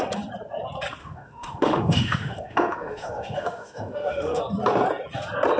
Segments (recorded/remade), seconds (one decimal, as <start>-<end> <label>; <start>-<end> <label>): 0.0-1.0 recorded; 1.0-4.4 remade; 4.4-5.6 recorded